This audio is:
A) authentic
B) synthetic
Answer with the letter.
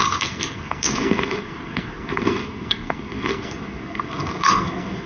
B